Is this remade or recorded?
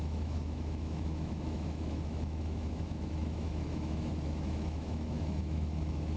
remade